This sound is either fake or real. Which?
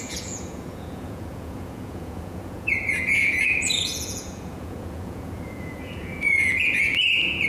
fake